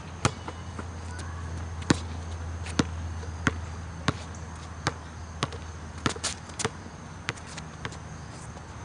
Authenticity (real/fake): real